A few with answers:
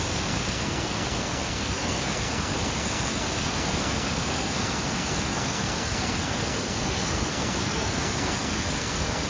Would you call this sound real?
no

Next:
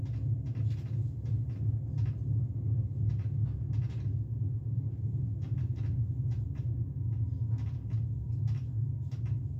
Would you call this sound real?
yes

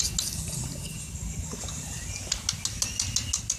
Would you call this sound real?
yes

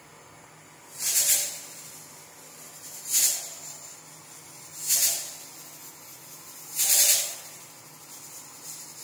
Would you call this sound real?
yes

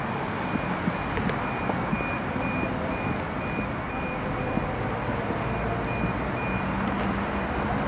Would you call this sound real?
yes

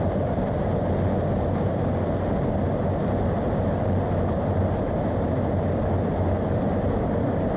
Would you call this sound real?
yes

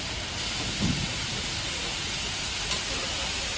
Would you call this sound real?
yes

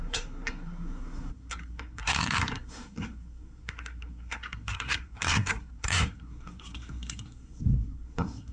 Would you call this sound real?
no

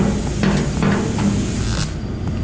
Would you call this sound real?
yes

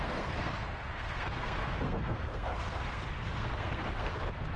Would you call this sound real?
no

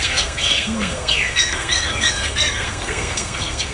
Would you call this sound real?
no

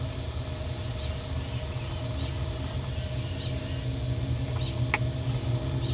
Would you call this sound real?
yes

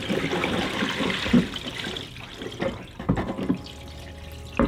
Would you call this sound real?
yes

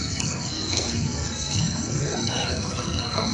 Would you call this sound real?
no